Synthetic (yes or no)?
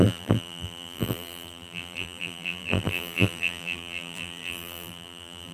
yes